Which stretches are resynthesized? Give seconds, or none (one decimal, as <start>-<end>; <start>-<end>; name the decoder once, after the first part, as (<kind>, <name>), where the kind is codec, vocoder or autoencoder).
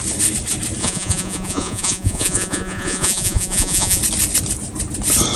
0.8-4.0 (vocoder, Vocos)